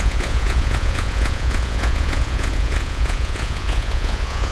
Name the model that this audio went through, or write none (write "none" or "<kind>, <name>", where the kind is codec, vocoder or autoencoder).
vocoder, Vocos